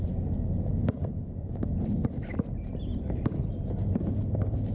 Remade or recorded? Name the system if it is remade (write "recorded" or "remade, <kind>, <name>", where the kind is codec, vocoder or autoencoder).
recorded